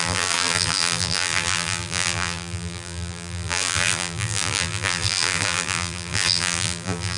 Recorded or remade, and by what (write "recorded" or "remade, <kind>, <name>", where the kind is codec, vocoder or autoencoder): remade, vocoder, BigVGAN v2